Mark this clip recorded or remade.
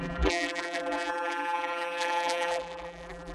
remade